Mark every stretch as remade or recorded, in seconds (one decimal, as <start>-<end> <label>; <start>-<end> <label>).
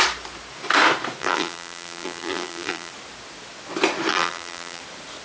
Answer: 0.0-1.2 recorded; 1.2-2.9 remade; 2.9-4.1 recorded; 4.1-4.8 remade; 4.8-5.2 recorded